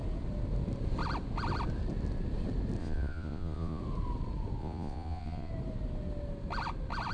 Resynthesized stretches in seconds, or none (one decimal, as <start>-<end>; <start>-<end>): 2.8-3.8; 4.6-5.5